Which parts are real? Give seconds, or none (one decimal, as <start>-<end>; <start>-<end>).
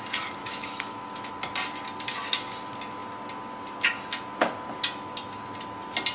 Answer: 0.0-0.4; 1.3-6.1